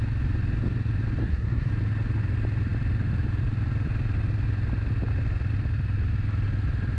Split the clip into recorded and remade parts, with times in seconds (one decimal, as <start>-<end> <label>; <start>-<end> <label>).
0.0-1.2 recorded; 1.2-1.7 remade; 1.7-7.0 recorded